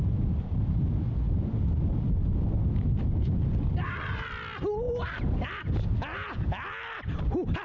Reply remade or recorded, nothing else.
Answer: recorded